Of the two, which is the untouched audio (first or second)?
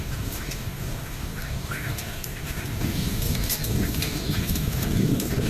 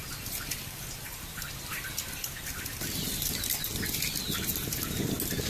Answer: second